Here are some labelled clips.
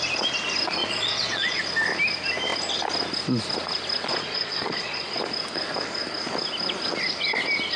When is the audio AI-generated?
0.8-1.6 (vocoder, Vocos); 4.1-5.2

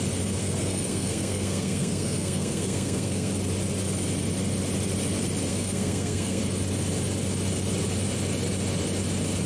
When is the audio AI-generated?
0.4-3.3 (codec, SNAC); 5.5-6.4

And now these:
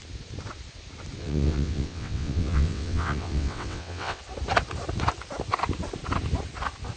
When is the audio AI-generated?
1.2-4.2 (vocoder, WaveNeXt)

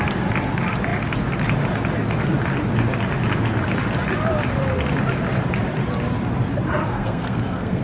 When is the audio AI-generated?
6.8-7.8 (codec, SNAC)

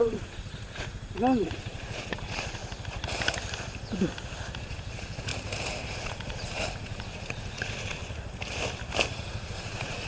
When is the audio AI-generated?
0.0-2.6 (vocoder, Vocos); 4.6-5.3; 5.9-8.0; 9.1-10.1

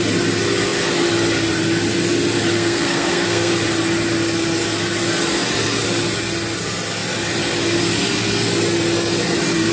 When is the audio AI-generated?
2.5-3.5 (codec, SNAC)